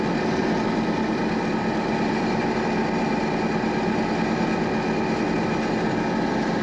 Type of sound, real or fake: real